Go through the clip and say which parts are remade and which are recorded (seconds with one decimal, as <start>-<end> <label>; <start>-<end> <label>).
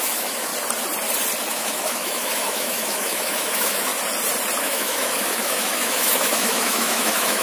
0.0-0.5 remade; 0.5-1.5 recorded; 1.5-3.9 remade; 3.9-4.6 recorded; 4.6-7.4 remade